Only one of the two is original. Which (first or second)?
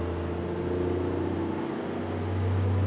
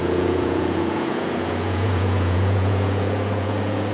first